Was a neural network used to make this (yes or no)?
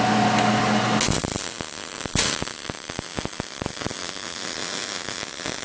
no